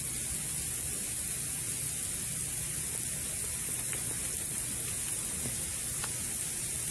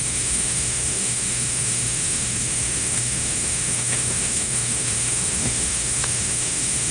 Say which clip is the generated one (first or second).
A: second